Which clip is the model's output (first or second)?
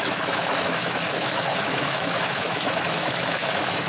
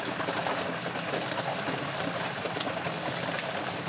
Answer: first